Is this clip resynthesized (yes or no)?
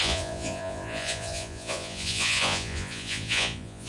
yes